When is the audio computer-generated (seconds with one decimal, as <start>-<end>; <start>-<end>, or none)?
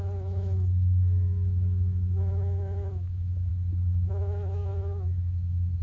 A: 0.0-3.5; 4.1-5.8